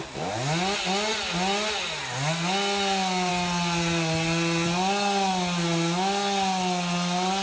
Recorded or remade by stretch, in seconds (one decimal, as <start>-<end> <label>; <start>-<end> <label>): 0.0-7.4 recorded